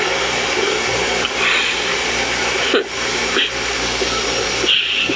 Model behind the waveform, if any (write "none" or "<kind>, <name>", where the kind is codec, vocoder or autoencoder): none